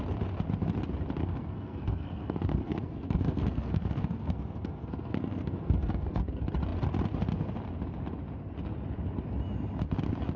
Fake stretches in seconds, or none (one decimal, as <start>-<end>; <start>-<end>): 1.2-6.2

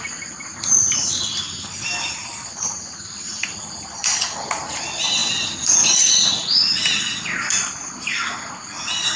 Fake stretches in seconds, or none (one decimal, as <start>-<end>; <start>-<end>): none